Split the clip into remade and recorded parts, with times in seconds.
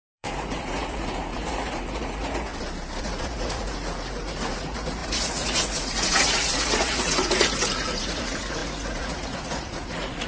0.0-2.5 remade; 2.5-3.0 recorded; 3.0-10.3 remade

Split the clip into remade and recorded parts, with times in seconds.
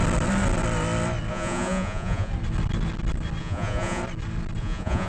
0.0-1.3 recorded; 1.3-2.3 remade; 2.3-3.4 recorded; 3.4-4.0 remade; 4.0-4.6 recorded; 4.6-5.1 remade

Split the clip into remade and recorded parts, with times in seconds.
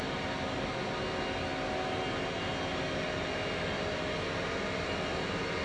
0.0-5.6 recorded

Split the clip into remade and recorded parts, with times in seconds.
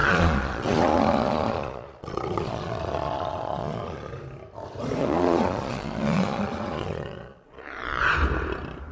0.0-4.1 remade; 4.1-5.0 recorded; 5.0-8.0 remade; 8.0-8.9 recorded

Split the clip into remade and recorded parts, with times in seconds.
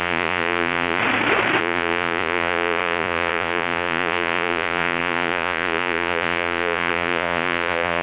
0.0-1.0 remade; 1.0-1.6 recorded; 1.6-8.0 remade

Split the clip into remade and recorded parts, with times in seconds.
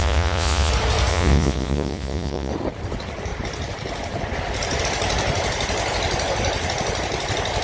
0.0-0.7 remade; 0.7-1.1 recorded; 1.1-2.5 remade; 2.5-7.6 recorded